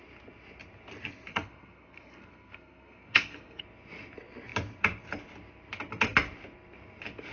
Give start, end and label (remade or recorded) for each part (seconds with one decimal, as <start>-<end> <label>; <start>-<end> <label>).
0.0-1.3 recorded; 1.3-3.6 remade; 3.6-7.3 recorded